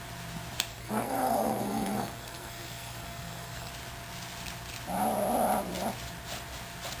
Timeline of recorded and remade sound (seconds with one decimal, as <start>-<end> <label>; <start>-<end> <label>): 0.0-0.7 recorded; 0.7-3.7 remade; 3.7-7.0 recorded